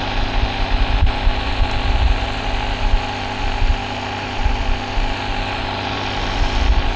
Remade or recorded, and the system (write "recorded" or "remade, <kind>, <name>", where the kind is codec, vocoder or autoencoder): recorded